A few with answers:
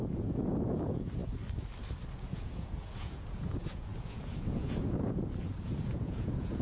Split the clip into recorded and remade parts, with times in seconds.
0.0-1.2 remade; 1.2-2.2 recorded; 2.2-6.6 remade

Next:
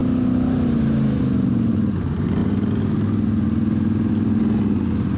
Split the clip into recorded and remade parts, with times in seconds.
0.0-5.2 recorded

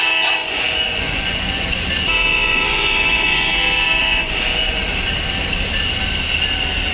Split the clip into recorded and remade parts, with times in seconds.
0.0-0.4 recorded; 0.4-1.8 remade; 1.8-2.3 recorded; 2.3-3.5 remade; 3.5-4.0 recorded; 4.0-4.8 remade; 4.8-6.9 recorded

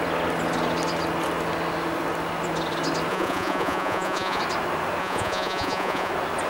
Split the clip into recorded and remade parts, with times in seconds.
0.0-3.1 recorded; 3.1-4.4 remade; 4.4-5.0 recorded; 5.0-6.1 remade; 6.1-6.5 recorded

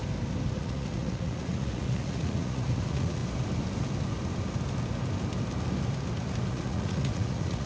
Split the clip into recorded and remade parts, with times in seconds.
0.0-0.5 recorded; 0.5-3.2 remade; 3.2-6.5 recorded; 6.5-7.7 remade

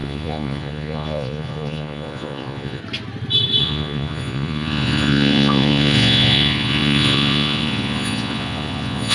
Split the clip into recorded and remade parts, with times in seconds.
0.0-2.8 remade; 2.8-3.6 recorded; 3.6-9.1 remade

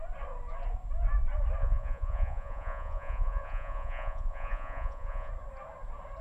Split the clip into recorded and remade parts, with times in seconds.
0.0-1.6 recorded; 1.6-5.3 remade; 5.3-6.2 recorded

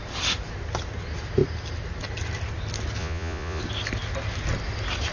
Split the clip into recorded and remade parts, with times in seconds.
0.0-3.0 recorded; 3.0-3.6 remade; 3.6-5.1 recorded